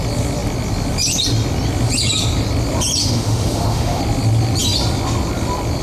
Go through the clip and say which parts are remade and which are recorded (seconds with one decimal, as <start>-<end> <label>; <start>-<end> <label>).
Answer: 0.0-3.0 recorded; 3.0-4.0 remade; 4.0-5.8 recorded